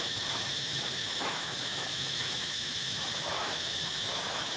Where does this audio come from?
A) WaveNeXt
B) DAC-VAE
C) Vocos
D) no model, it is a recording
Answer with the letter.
B